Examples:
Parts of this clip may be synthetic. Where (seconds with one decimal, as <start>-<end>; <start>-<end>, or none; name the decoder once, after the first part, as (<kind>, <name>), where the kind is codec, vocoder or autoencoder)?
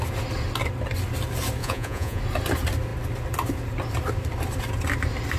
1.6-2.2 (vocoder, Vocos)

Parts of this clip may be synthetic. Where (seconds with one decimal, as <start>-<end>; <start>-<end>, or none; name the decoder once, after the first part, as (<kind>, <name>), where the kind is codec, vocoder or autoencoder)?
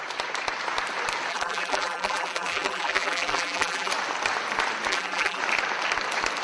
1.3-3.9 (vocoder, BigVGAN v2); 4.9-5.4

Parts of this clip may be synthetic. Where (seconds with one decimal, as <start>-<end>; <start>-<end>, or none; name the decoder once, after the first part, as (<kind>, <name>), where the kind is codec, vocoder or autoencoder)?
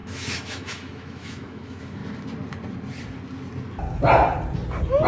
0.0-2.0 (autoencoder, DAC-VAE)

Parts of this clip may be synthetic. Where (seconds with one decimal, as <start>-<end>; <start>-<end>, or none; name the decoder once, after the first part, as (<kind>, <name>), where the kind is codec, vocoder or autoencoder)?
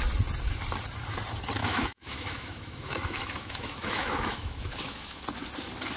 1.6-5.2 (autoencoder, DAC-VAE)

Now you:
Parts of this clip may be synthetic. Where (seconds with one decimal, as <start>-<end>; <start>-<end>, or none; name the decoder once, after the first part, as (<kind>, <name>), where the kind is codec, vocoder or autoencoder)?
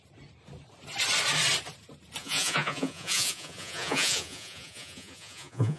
2.2-5.8 (vocoder, Vocos)